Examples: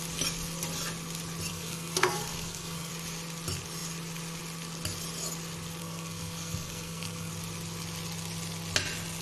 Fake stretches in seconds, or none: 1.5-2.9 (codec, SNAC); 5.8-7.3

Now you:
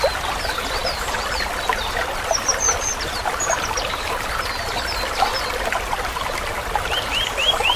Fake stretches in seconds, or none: none